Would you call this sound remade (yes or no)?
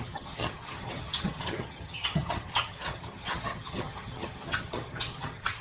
yes